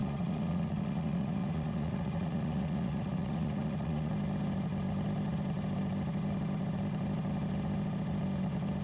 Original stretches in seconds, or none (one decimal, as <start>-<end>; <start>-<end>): 4.1-8.8